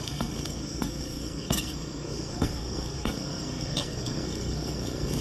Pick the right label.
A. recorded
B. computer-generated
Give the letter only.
B